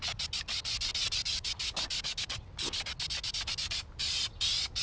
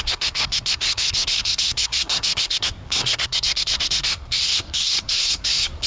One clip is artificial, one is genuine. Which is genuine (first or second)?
first